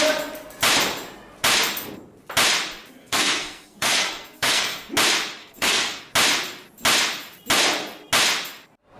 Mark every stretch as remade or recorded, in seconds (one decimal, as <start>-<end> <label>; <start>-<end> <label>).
0.0-3.0 recorded; 3.0-4.9 remade; 4.9-5.4 recorded; 5.4-6.0 remade; 6.0-9.0 recorded